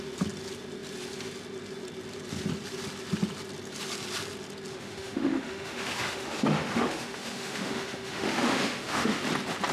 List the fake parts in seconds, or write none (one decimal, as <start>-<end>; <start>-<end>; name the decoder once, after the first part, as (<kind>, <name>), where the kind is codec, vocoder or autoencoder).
4.7-9.2 (autoencoder, DAC-VAE)